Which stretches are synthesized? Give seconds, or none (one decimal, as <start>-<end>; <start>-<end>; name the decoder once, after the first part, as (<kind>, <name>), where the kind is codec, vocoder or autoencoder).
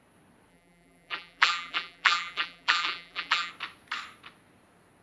0.5-3.5 (vocoder, BigVGAN v2)